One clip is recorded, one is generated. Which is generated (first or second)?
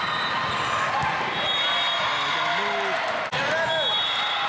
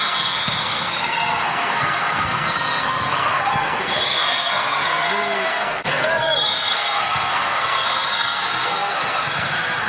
second